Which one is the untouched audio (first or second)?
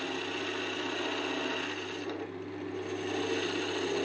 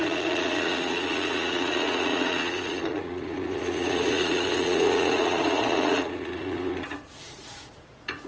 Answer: first